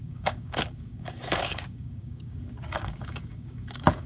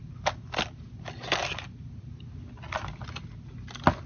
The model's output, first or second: first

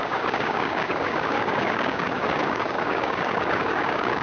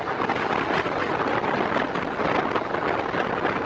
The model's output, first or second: first